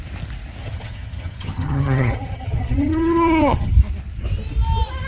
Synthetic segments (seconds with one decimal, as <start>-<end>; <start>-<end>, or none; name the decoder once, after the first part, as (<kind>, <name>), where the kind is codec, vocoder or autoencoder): 0.6-3.7 (vocoder, HiFi-GAN)